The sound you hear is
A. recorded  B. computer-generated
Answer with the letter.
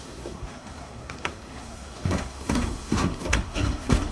B